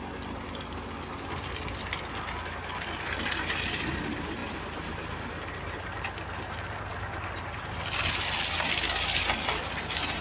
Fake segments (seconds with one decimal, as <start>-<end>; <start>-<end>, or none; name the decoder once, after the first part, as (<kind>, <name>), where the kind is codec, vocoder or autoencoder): none